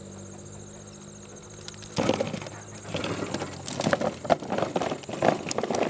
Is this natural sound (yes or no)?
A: yes